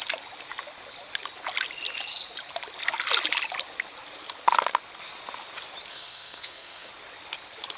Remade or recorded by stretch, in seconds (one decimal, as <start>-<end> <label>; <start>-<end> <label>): 0.0-5.9 recorded; 5.9-6.9 remade; 6.9-7.8 recorded